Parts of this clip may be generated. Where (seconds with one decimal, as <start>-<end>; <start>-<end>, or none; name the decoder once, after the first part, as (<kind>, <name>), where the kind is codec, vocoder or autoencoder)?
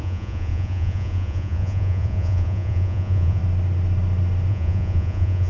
0.0-3.4 (vocoder, Vocos); 4.5-5.5